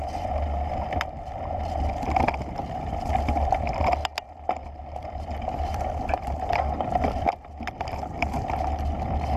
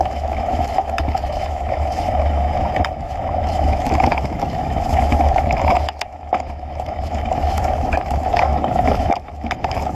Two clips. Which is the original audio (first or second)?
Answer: first